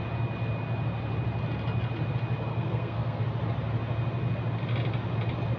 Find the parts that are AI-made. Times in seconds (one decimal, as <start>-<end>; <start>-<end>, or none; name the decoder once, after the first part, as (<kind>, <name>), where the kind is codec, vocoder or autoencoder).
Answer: 2.5-3.2 (codec, SNAC)